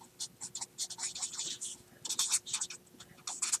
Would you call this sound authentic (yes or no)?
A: yes